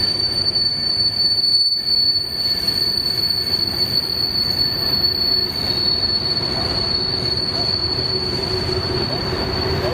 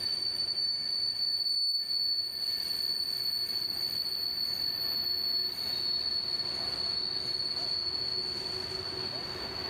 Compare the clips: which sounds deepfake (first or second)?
first